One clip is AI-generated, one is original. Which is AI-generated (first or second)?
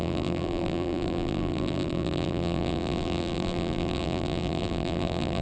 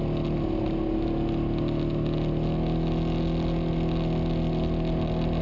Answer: first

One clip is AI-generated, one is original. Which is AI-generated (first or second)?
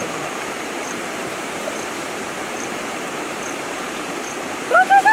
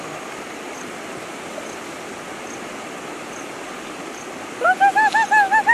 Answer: first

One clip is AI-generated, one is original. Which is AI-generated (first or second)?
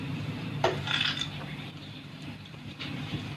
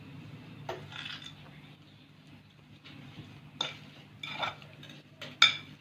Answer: first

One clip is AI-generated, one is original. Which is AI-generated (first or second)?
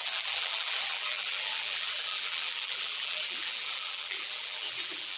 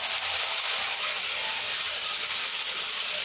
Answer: first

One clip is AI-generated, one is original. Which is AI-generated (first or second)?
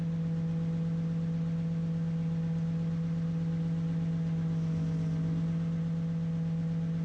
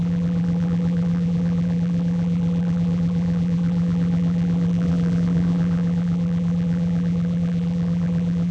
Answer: second